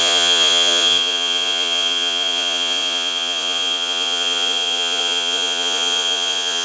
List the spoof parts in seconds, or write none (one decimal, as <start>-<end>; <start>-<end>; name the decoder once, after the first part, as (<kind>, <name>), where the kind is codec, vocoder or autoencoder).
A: 0.0-6.6 (vocoder, Vocos)